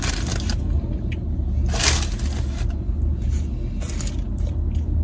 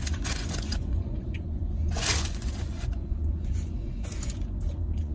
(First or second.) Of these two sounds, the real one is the first